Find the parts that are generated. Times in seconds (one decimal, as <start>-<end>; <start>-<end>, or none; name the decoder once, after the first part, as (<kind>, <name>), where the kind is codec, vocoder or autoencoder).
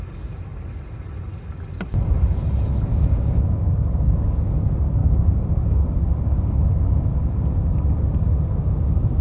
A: 2.9-4.6 (codec, DAC); 5.0-9.2